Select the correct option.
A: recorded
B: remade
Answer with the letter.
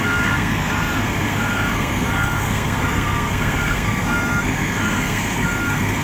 B